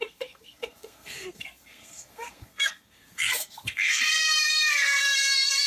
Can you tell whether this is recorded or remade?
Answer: remade